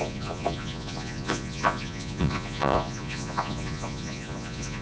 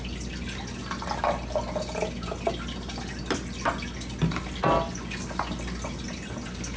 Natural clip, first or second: second